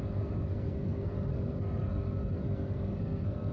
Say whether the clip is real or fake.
fake